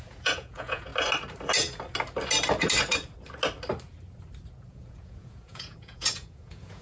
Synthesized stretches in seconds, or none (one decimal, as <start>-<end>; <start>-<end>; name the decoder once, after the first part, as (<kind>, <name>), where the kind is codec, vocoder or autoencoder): 0.0-0.9 (vocoder, Vocos); 4.7-6.8